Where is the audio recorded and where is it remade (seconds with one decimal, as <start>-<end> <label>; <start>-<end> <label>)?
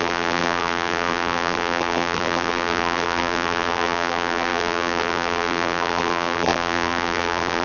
0.0-7.6 remade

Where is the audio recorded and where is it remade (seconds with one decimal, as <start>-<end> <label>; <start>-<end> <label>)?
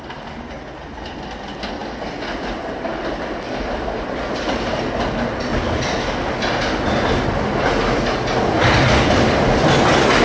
0.0-10.2 recorded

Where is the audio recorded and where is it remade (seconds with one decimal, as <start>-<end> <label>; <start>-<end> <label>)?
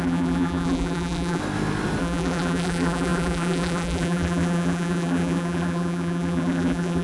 0.0-1.4 remade; 1.4-2.0 recorded; 2.0-7.0 remade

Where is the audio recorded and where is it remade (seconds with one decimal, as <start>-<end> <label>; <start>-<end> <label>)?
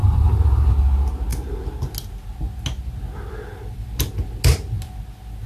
0.0-0.7 remade; 0.7-5.5 recorded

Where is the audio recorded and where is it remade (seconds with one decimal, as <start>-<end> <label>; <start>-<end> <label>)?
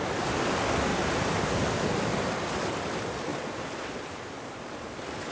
0.0-3.3 recorded; 3.3-3.9 remade; 3.9-5.3 recorded